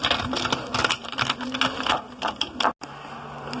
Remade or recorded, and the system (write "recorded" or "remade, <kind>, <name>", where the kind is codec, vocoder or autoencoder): recorded